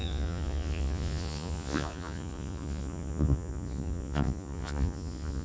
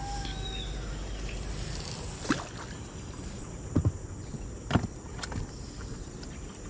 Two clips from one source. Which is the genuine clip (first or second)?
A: second